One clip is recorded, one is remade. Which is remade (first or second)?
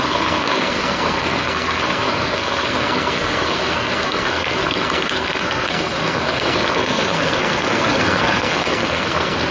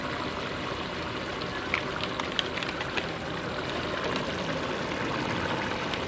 first